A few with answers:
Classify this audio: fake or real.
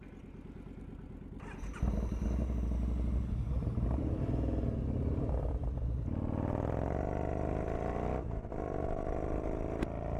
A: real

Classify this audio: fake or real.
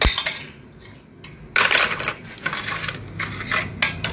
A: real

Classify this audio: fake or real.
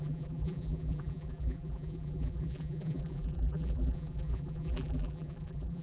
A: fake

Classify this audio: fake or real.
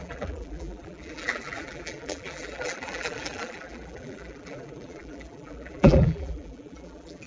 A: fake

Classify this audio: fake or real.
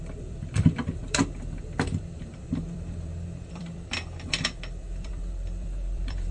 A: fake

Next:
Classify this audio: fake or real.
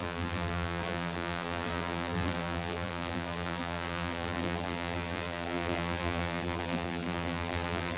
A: fake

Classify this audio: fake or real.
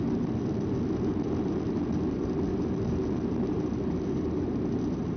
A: fake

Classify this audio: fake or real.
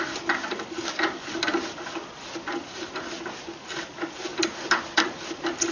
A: real